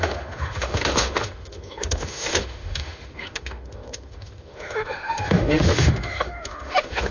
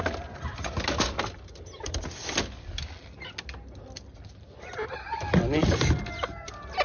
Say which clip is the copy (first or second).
first